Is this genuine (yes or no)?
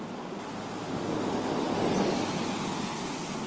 yes